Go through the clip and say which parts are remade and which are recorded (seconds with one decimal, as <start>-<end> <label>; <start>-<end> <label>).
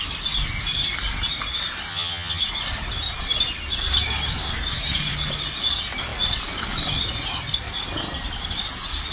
0.0-1.9 recorded; 1.9-2.4 remade; 2.4-9.1 recorded